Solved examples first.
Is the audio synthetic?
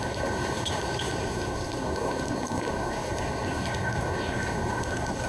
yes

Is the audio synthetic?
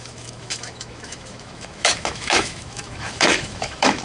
yes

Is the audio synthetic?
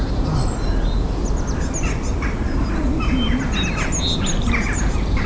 no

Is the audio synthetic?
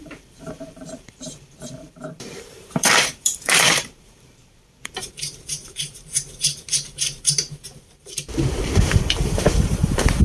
yes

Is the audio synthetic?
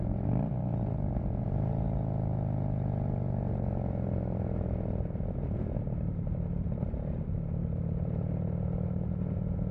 no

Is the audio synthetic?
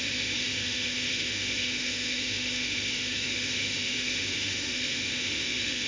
yes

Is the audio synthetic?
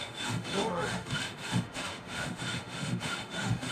yes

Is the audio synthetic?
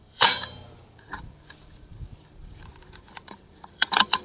yes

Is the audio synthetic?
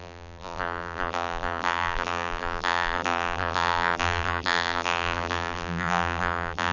yes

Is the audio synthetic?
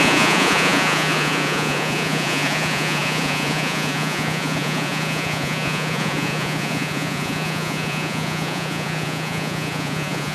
yes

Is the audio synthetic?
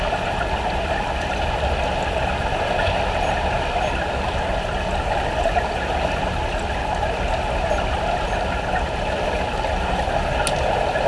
no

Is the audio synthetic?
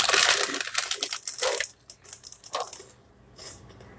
no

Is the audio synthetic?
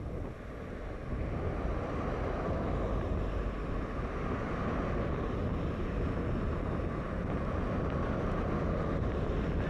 no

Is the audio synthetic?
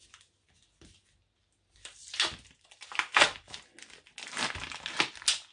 no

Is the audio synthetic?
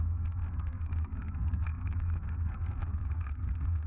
yes